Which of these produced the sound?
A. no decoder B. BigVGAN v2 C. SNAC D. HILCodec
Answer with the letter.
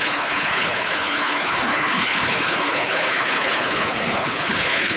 D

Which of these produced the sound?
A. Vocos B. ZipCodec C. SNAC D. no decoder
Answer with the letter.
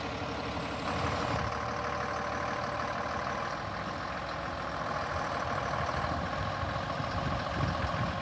D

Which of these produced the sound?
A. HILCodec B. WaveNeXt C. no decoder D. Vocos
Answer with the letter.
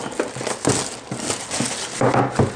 C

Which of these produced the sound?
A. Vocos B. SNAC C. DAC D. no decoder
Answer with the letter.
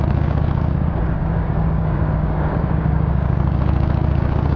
C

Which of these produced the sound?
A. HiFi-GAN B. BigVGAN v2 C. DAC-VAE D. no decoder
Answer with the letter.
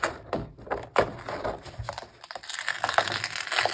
D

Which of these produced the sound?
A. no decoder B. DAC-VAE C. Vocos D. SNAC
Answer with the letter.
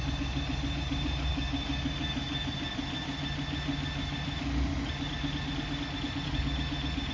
A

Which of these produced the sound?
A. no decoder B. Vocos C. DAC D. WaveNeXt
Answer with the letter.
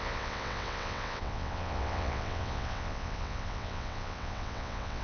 D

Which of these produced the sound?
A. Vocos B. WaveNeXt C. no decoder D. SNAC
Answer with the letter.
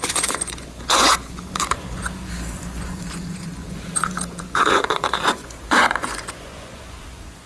A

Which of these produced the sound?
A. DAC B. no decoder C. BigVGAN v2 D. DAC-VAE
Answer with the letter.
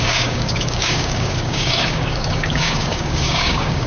A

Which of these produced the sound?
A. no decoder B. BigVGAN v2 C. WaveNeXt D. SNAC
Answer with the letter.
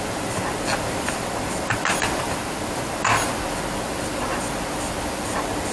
A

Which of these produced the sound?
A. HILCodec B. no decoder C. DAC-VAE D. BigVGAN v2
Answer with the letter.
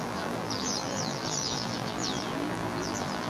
D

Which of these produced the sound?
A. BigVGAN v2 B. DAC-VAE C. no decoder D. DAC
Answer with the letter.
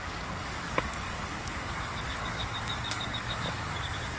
D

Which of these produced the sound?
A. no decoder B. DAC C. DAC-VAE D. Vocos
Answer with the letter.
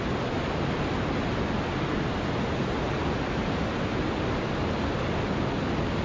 A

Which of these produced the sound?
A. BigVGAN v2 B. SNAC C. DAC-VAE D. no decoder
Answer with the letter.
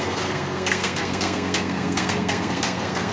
B